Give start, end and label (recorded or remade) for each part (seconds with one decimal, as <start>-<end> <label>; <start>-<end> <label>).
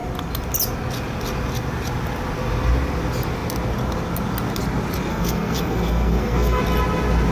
0.0-5.1 recorded; 5.1-6.6 remade; 6.6-7.3 recorded